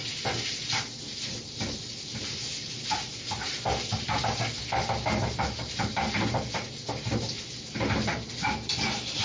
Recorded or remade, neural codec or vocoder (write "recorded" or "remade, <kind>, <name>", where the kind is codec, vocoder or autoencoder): recorded